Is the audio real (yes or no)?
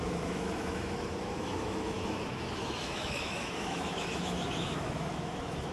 no